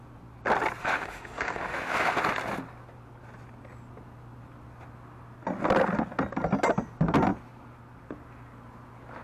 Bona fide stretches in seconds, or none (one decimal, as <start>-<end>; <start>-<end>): 0.0-0.8; 2.2-9.2